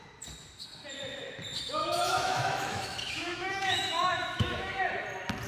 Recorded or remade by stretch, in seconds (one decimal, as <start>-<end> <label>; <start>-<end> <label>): 0.0-1.8 recorded; 1.8-4.8 remade; 4.8-5.5 recorded